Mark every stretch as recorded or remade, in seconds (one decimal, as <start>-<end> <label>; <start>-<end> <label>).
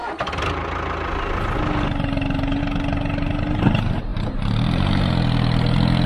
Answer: 0.0-4.1 recorded; 4.1-5.1 remade; 5.1-6.1 recorded